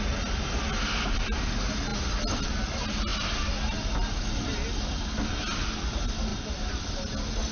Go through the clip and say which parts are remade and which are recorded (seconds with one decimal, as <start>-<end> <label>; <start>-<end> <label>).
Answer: 0.0-7.5 recorded